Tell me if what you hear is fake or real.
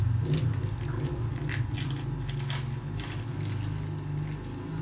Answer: real